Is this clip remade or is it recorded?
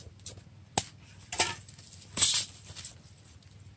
recorded